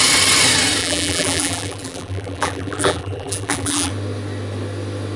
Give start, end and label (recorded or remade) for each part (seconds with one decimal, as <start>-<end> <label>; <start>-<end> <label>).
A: 0.0-0.8 recorded; 0.8-3.9 remade; 3.9-5.2 recorded